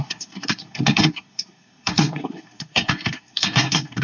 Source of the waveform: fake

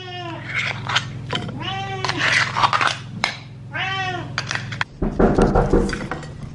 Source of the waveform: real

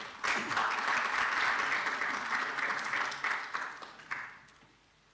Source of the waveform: real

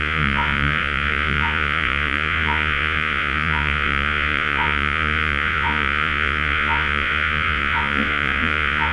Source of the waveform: fake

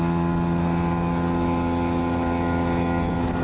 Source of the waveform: real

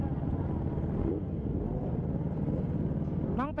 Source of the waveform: real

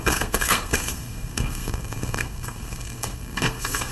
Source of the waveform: fake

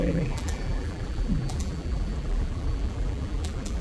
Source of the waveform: fake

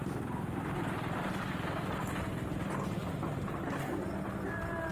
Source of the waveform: real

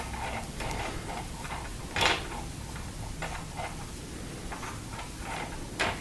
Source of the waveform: real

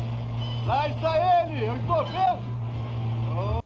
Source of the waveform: real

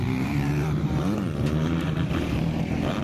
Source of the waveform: fake